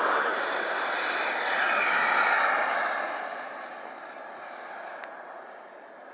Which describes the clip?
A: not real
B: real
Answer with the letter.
B